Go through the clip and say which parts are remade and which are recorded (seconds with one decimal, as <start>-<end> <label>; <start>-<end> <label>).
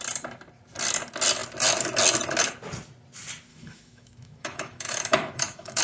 0.0-3.5 recorded; 3.5-5.8 remade